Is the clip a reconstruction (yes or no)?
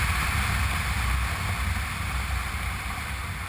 no